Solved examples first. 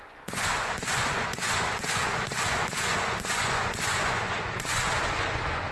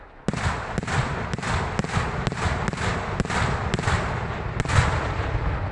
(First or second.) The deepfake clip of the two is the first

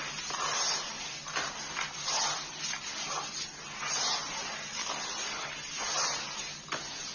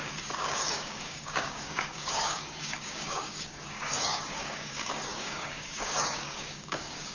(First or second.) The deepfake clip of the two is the second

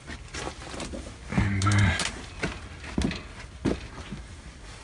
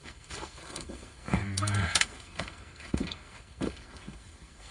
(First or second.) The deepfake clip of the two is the second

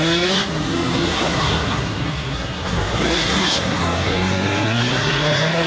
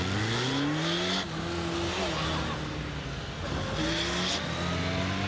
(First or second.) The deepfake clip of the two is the first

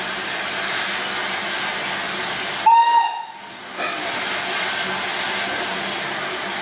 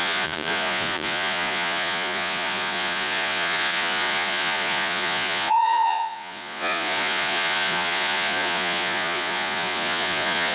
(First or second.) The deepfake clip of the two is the second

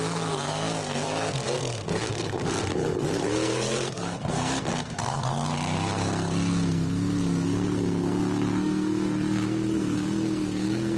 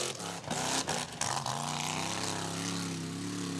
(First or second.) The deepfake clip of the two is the first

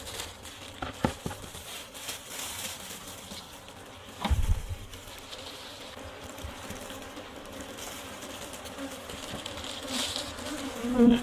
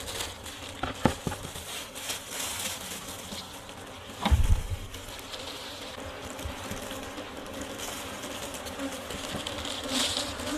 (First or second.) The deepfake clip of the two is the first